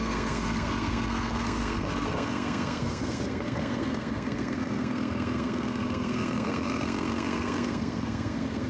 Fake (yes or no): yes